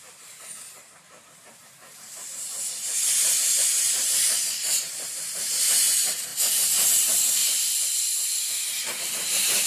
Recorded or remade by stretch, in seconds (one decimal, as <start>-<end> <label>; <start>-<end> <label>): 0.0-6.3 remade; 6.3-6.9 recorded; 6.9-7.4 remade; 7.4-9.0 recorded; 9.0-9.7 remade

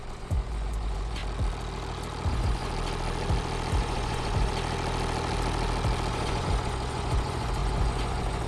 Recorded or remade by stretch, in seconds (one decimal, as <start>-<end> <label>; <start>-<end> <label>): 0.0-1.2 remade; 1.2-2.3 recorded; 2.3-2.7 remade; 2.7-3.8 recorded; 3.8-4.5 remade; 4.5-6.1 recorded; 6.1-8.5 remade

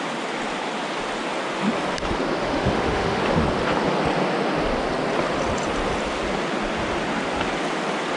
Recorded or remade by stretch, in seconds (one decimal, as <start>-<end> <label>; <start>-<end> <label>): 0.0-2.4 recorded; 2.4-3.2 remade; 3.2-8.2 recorded

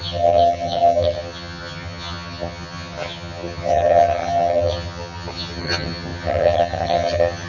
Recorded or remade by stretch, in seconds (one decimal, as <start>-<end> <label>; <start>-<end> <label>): 0.0-7.5 remade

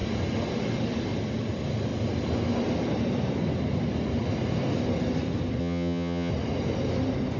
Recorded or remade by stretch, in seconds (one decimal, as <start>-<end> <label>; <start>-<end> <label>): 0.0-5.6 recorded; 5.6-6.3 remade; 6.3-7.4 recorded

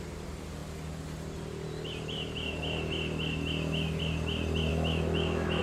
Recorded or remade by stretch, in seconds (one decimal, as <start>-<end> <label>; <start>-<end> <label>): 0.0-4.7 recorded; 4.7-5.6 remade

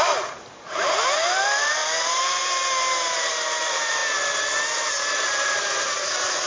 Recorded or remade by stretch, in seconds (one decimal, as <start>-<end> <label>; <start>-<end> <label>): 0.0-4.0 remade; 4.0-4.7 recorded; 4.7-6.5 remade

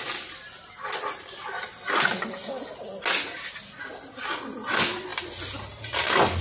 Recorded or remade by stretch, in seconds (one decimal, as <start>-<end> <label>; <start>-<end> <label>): 0.0-6.4 recorded